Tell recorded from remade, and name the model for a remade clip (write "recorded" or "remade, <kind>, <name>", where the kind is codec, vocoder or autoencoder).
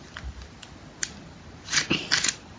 recorded